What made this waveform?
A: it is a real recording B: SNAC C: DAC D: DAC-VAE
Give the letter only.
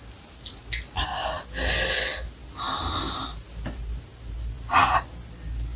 A